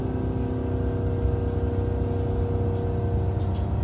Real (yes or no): yes